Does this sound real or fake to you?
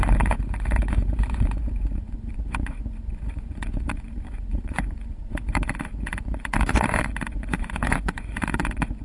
fake